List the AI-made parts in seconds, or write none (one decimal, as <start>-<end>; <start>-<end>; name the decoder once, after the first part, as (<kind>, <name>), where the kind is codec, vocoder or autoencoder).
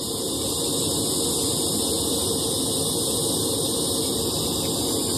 none